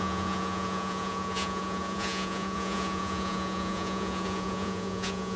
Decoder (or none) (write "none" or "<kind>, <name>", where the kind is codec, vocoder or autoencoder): vocoder, Vocos